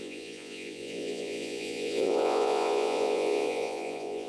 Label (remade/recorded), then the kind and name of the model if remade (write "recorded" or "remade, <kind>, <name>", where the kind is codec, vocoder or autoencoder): remade, vocoder, Vocos